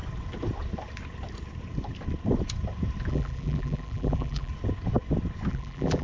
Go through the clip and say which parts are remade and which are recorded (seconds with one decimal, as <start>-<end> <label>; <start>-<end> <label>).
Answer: 0.0-3.1 recorded; 3.1-4.5 remade; 4.5-5.5 recorded; 5.5-6.0 remade